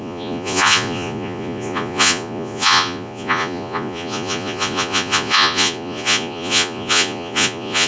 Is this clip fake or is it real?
fake